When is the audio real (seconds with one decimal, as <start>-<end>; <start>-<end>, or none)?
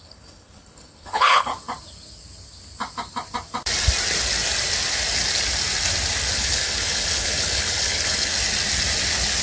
1.5-6.3; 8.3-9.4